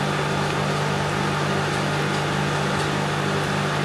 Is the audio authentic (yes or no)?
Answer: yes